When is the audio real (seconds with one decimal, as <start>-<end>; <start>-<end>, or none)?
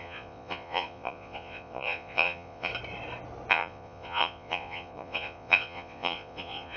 2.7-3.5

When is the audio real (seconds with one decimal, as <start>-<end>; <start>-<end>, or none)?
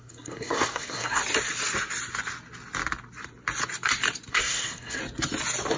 1.2-4.3; 5.0-5.8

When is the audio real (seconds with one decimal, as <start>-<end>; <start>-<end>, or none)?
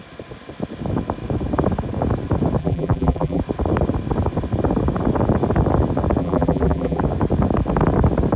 0.0-2.6; 3.4-6.2; 7.0-8.4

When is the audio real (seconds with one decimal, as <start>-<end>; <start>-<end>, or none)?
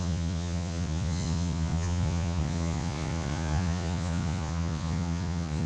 none